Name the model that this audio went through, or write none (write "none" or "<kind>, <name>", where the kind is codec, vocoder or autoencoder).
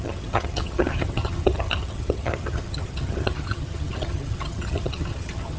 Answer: vocoder, HiFi-GAN